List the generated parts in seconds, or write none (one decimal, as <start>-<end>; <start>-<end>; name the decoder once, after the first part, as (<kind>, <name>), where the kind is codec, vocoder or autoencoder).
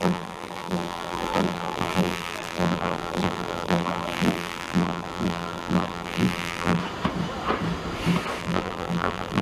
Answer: 0.0-6.8 (vocoder, BigVGAN v2); 8.4-9.4